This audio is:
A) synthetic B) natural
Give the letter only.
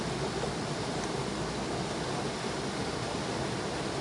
B